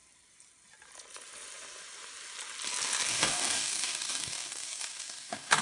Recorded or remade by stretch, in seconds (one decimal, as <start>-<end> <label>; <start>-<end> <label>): 0.0-3.1 recorded; 3.1-5.6 remade